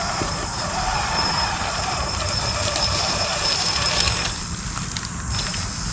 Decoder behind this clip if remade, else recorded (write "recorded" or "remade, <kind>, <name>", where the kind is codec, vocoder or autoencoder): recorded